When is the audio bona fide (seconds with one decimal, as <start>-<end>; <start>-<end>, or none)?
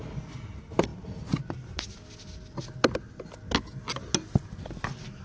0.0-5.2